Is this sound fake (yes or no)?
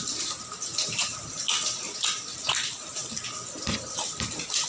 no